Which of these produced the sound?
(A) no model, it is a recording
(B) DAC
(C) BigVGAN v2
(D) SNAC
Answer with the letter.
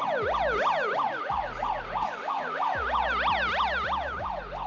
A